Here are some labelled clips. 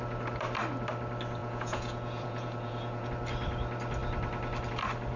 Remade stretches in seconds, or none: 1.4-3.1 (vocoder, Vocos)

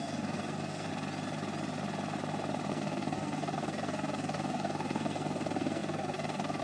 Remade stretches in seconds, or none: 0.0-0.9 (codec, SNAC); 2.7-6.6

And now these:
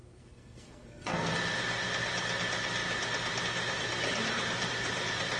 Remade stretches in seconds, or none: 0.0-1.3 (codec, SNAC)

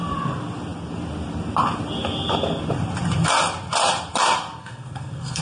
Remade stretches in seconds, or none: 4.6-5.4 (codec, SNAC)

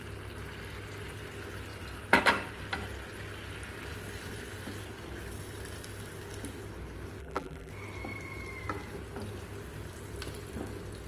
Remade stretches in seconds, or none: 7.2-7.7 (vocoder, BigVGAN v2)

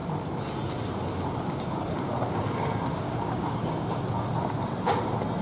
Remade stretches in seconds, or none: 1.1-4.3 (codec, DAC)

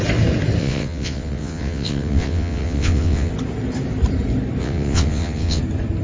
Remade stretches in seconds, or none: 0.6-3.3 (vocoder, WaveNeXt); 4.6-5.6

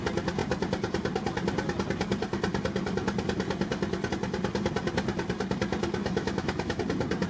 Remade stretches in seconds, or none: 6.0-6.8 (autoencoder, DAC-VAE)